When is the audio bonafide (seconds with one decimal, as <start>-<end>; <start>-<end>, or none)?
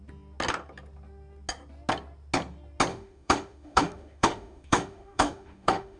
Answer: 0.0-2.9